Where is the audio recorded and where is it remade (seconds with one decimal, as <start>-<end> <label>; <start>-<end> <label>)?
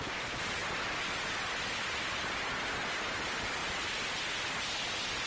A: 0.0-5.3 recorded